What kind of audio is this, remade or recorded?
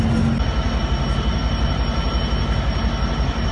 recorded